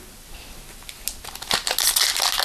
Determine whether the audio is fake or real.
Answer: real